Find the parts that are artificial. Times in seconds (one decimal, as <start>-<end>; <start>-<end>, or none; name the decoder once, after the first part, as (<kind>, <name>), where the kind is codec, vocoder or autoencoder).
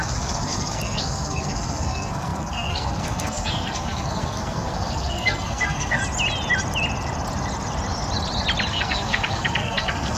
0.0-6.0 (codec, SNAC); 8.7-10.2